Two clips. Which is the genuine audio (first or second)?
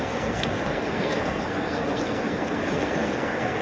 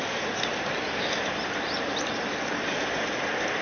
second